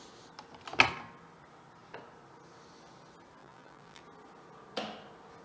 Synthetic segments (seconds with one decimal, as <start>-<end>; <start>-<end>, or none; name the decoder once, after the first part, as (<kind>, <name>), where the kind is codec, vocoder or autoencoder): 3.4-4.0 (vocoder, BigVGAN v2)